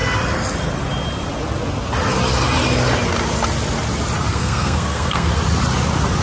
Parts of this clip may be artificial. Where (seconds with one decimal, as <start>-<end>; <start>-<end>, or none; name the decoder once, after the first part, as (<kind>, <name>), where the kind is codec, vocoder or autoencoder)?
4.3-5.3 (codec, SNAC)